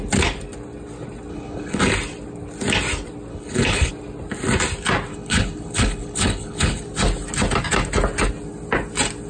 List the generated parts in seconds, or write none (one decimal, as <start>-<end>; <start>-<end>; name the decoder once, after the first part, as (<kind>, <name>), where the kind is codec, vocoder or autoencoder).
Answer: 1.3-1.8 (codec, HILCodec); 3.3-3.9; 5.1-6.8